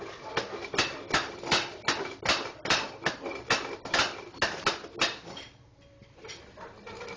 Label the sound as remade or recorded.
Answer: recorded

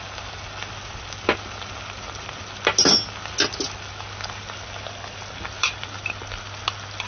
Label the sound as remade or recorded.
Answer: recorded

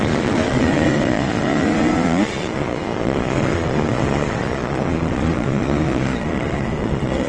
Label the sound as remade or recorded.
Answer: remade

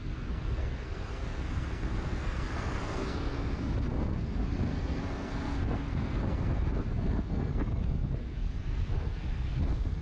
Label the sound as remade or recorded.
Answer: remade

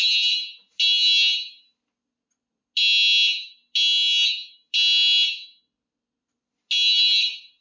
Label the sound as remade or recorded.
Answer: recorded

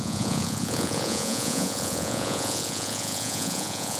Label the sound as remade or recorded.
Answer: remade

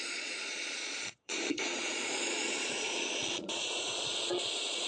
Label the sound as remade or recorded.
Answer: remade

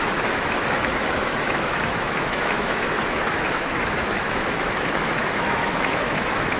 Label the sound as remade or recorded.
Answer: remade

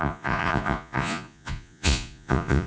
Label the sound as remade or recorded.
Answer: remade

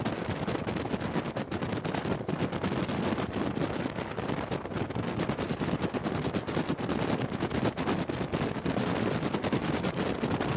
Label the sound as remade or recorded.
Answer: recorded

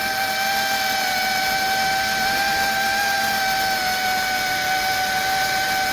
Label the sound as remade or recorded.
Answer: recorded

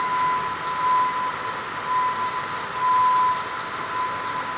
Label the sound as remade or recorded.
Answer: recorded